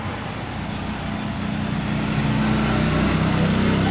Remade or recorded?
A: recorded